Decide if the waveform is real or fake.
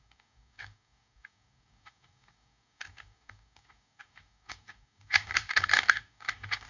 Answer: fake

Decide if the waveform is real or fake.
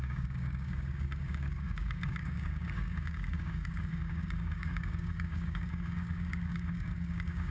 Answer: fake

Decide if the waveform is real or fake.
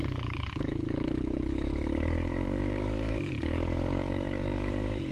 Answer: fake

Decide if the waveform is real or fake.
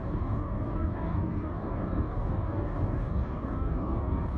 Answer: fake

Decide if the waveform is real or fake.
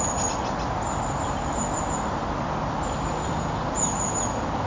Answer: real